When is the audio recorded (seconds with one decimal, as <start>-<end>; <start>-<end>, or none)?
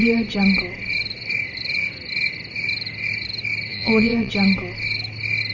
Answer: 0.0-3.7; 4.3-5.5